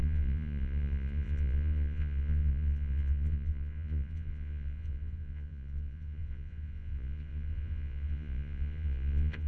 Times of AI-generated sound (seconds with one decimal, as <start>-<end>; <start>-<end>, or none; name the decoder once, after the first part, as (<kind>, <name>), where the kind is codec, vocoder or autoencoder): 0.0-9.5 (vocoder, Vocos)